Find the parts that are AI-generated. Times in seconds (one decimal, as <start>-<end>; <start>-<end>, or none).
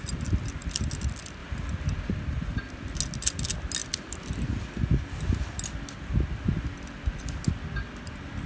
none